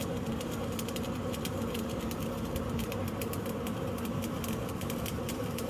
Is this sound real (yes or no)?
no